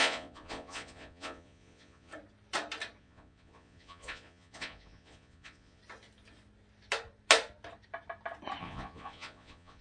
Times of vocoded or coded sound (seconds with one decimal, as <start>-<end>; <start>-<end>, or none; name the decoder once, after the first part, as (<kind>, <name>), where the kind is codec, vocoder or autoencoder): 0.0-2.1 (vocoder, Vocos); 3.0-5.8; 8.6-9.8